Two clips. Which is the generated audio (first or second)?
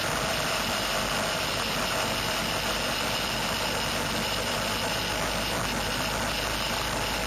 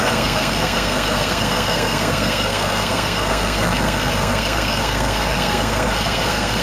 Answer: second